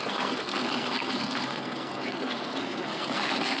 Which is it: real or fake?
fake